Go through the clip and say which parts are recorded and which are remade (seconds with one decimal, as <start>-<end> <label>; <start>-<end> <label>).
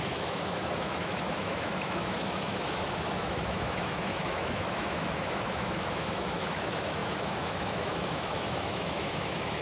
0.0-9.6 remade